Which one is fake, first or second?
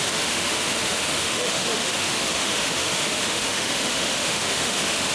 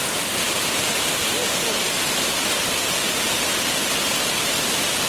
first